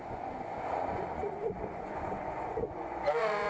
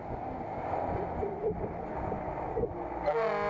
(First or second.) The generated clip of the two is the first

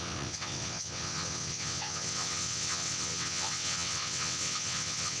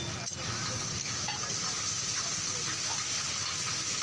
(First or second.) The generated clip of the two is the first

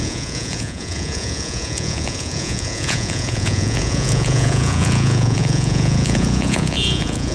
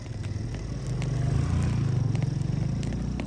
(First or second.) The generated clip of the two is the first